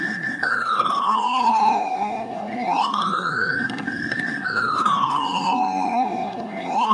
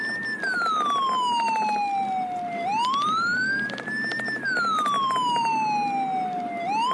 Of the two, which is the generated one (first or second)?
first